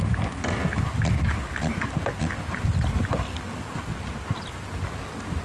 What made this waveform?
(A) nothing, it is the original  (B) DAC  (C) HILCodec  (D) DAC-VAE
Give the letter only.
A